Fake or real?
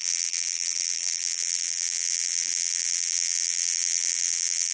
fake